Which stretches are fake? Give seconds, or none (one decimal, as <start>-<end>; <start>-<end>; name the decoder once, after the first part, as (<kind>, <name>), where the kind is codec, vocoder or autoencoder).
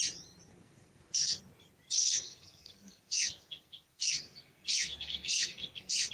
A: 0.5-1.4 (codec, SNAC); 2.0-6.1